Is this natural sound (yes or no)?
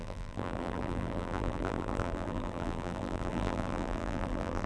no